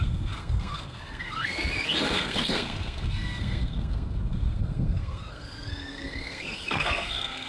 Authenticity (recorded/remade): remade